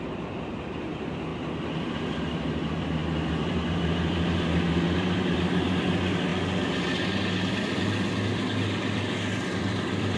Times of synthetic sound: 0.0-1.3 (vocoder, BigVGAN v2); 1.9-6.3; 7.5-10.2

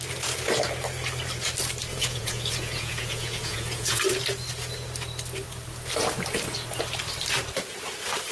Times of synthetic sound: 1.9-4.0 (vocoder, Vocos)

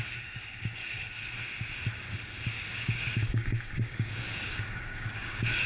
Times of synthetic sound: 0.0-0.8 (codec, DAC); 2.7-5.7